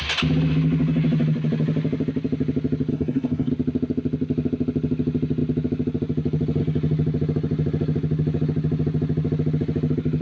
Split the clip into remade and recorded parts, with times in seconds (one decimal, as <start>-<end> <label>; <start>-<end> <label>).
0.0-2.9 recorded; 2.9-3.5 remade; 3.5-10.2 recorded